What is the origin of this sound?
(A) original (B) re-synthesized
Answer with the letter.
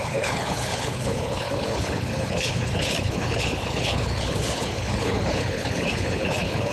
B